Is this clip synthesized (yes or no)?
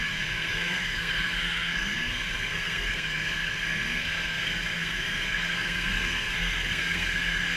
yes